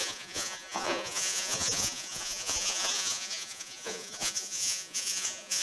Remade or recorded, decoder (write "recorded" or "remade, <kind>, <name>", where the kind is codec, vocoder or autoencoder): remade, vocoder, Vocos